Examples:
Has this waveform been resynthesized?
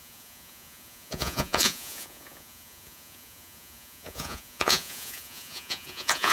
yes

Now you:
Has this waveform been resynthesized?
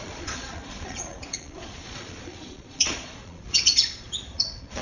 yes